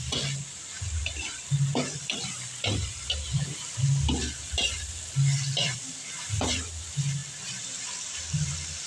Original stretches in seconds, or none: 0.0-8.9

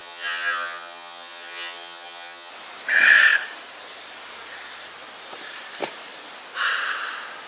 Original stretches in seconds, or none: 2.5-7.5

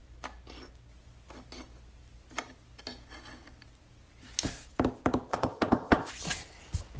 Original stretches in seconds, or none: 0.0-5.3; 6.1-7.0

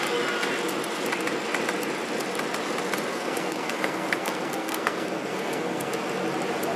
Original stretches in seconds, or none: 0.0-3.1; 5.9-6.8

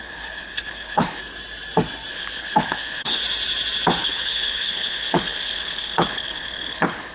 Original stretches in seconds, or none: 1.2-2.1; 3.2-4.0